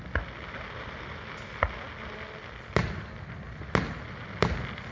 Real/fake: real